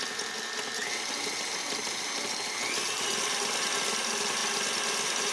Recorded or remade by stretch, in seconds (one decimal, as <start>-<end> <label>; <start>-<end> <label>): 0.0-5.3 recorded